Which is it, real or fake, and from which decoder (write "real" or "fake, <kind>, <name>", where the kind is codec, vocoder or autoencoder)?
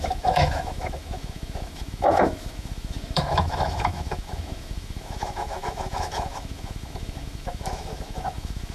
fake, autoencoder, DAC-VAE